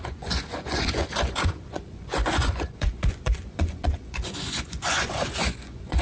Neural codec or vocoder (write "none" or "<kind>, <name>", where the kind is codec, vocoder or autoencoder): vocoder, Vocos